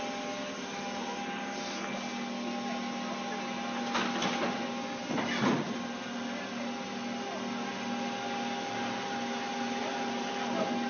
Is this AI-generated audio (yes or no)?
no